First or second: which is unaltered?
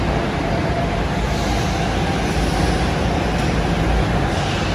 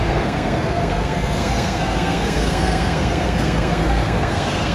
first